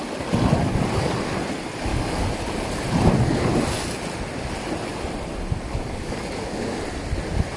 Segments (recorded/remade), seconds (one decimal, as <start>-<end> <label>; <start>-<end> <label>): 0.0-1.9 recorded; 1.9-2.4 remade; 2.4-5.7 recorded; 5.7-6.8 remade; 6.8-7.6 recorded